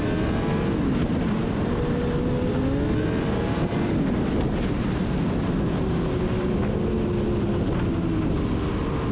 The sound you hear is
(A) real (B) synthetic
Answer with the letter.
A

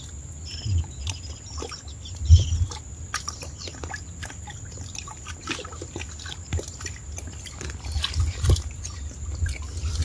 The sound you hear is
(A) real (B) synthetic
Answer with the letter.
A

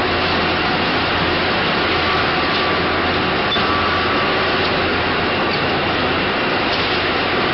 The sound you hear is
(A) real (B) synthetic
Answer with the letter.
A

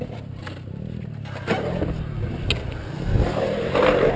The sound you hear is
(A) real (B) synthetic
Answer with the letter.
A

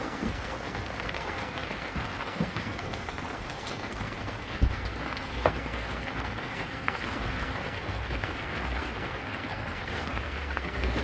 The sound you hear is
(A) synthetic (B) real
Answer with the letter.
A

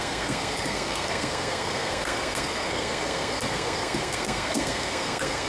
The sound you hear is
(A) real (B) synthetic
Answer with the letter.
B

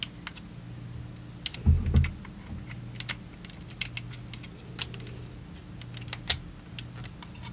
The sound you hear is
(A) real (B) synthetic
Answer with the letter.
A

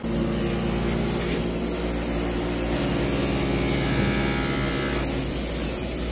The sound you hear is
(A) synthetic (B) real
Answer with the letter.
B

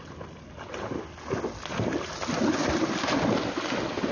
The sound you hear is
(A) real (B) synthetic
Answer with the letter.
A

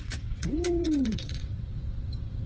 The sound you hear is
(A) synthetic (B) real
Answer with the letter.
A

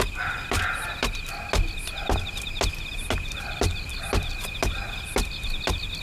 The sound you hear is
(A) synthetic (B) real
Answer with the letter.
B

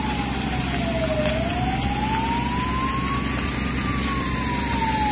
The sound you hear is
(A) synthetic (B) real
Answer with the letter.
B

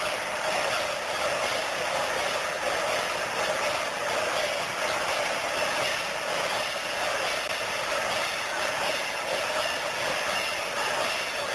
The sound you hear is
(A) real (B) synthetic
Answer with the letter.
A